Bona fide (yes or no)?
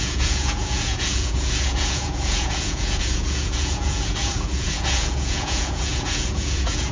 no